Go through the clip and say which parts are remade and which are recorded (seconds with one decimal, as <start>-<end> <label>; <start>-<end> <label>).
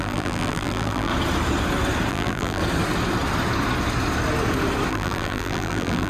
0.0-1.1 remade; 1.1-2.1 recorded; 2.1-2.6 remade; 2.6-4.9 recorded; 4.9-6.1 remade